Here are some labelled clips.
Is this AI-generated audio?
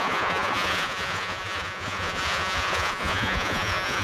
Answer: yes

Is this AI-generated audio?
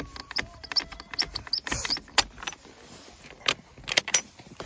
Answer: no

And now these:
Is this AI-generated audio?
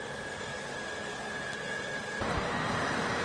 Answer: yes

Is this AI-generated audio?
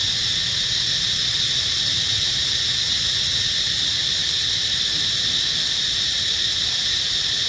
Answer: no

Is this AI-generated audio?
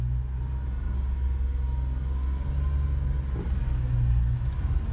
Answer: no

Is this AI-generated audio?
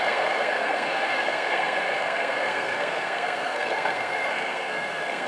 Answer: yes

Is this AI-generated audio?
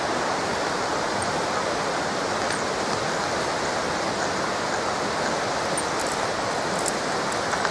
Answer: no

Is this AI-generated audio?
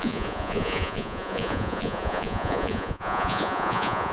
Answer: yes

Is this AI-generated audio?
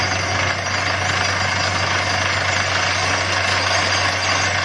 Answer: no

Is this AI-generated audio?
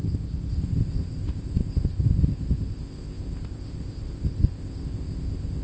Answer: yes